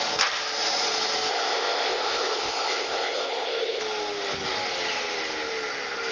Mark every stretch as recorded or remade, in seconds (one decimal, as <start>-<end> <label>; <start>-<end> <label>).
0.0-1.3 recorded; 1.3-3.8 remade; 3.8-6.1 recorded